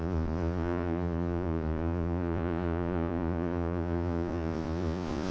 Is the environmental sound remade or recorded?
remade